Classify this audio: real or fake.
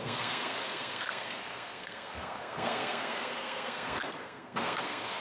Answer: fake